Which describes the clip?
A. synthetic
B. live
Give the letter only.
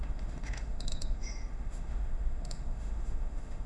A